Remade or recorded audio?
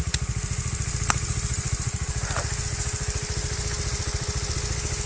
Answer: recorded